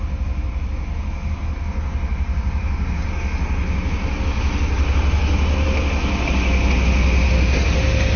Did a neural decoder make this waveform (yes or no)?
no